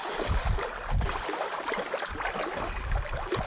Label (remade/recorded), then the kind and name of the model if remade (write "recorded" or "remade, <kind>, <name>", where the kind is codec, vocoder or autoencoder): recorded